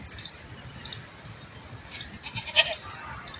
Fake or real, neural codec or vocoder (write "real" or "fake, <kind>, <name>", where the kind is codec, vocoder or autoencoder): real